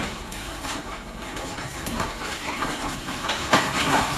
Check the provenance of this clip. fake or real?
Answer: fake